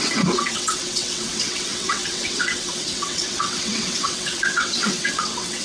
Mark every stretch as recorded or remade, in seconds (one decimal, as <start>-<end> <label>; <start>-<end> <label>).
0.0-5.6 remade